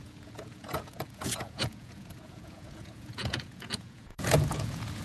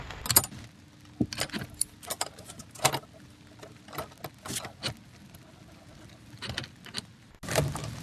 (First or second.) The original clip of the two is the second